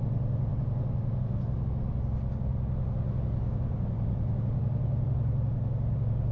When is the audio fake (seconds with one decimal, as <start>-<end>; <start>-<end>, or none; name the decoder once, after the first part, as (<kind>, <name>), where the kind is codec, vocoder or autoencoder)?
none